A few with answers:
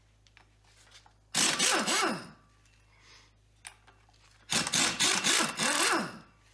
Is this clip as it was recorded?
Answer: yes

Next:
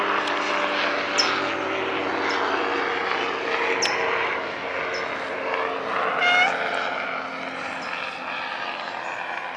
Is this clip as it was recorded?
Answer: yes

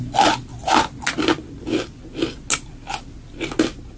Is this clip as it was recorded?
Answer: yes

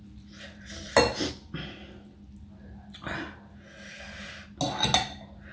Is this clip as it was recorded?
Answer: yes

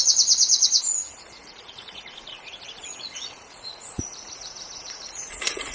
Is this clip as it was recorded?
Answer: no